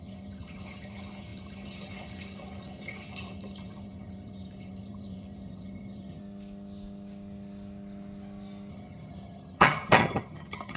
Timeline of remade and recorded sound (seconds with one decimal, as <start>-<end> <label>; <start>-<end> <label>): 0.0-6.2 remade; 6.2-8.7 recorded; 8.7-10.8 remade